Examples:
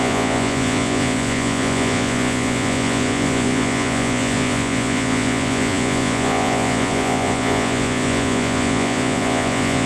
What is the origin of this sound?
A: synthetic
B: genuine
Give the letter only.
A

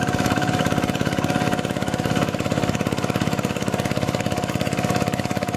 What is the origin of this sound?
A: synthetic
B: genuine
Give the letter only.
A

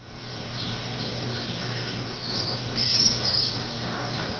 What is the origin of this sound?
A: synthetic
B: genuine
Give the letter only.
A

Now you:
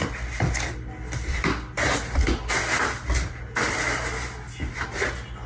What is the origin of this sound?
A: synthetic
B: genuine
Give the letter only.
B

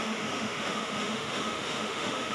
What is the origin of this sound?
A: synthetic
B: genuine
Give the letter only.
A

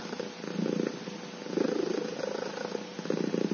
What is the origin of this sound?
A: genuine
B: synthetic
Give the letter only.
A